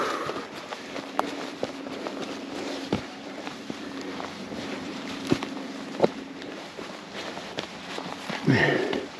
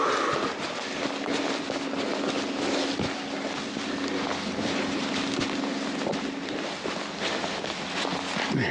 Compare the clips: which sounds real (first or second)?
second